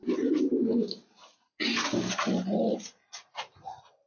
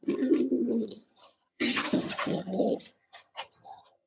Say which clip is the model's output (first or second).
second